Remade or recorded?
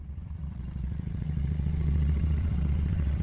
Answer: remade